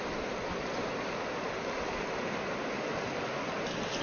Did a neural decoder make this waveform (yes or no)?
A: no